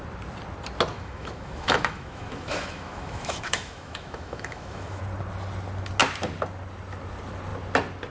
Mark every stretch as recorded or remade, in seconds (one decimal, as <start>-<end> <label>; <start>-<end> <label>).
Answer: 0.0-0.9 recorded; 0.9-5.0 remade; 5.0-8.1 recorded

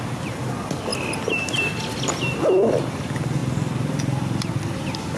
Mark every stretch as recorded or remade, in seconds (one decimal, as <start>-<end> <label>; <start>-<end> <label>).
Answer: 0.0-5.2 recorded